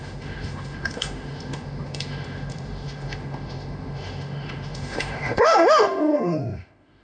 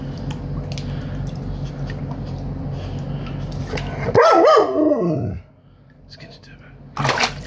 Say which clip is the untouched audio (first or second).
second